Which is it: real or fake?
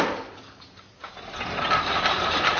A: fake